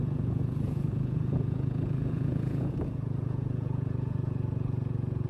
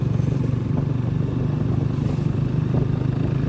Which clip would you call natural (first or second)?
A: second